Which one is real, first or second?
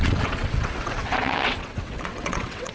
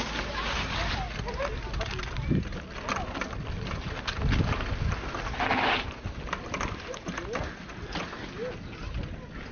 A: second